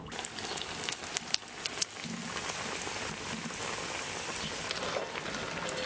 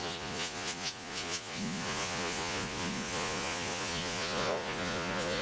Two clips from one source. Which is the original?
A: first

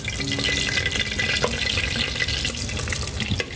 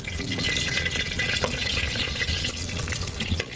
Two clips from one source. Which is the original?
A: first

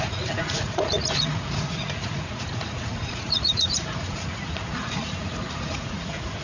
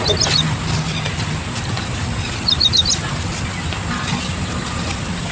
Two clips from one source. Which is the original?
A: second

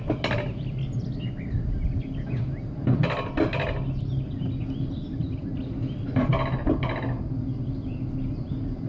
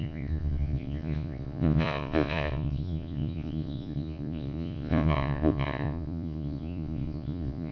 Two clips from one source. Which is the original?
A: first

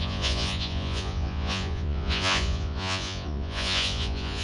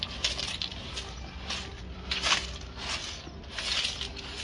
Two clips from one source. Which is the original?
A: second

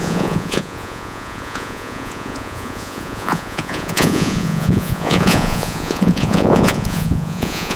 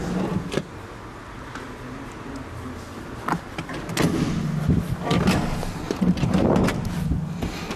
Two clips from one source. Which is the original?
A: second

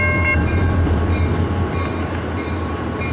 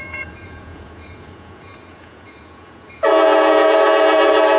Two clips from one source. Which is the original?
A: first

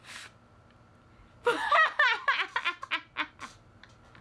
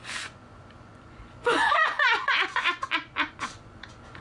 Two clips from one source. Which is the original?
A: first